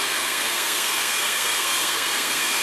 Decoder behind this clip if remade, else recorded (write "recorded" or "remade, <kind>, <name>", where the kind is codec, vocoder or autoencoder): remade, codec, SNAC